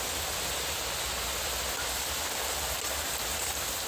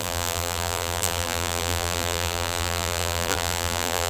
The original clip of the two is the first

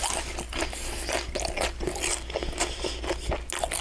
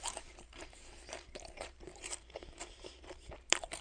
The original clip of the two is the first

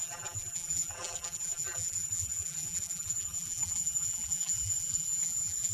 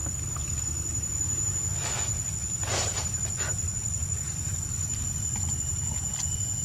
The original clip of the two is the second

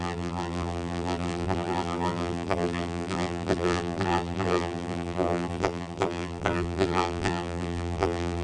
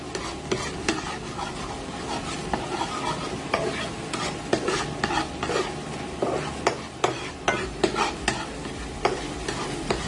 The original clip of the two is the second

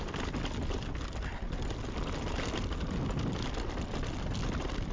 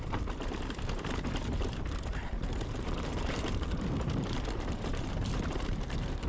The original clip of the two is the first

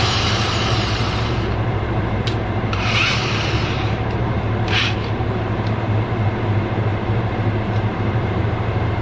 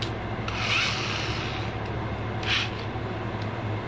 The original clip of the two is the second